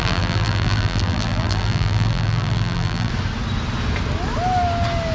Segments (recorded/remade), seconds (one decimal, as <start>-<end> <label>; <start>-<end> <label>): 0.0-3.1 remade; 3.1-5.1 recorded